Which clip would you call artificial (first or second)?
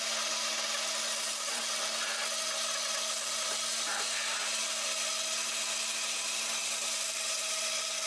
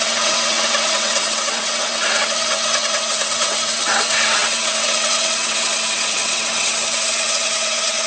second